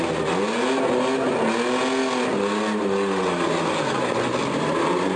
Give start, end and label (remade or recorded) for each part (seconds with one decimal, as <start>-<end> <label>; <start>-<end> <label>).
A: 0.0-5.2 recorded